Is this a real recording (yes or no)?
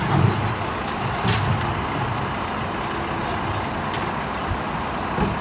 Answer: yes